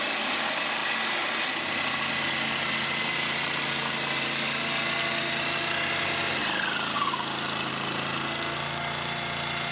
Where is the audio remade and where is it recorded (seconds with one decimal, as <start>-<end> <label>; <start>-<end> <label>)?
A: 0.0-9.7 recorded